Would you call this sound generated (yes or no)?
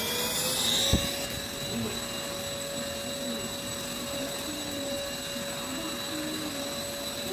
no